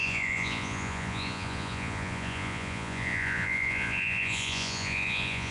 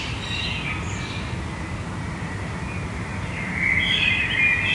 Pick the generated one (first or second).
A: first